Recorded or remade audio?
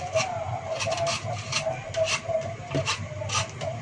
recorded